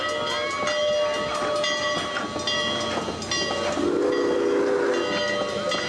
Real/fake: real